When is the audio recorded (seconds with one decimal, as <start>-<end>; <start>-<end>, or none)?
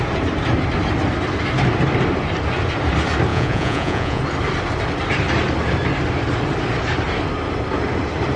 0.0-3.3; 4.2-8.4